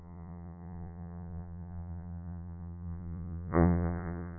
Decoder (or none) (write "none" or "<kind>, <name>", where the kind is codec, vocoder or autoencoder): vocoder, Vocos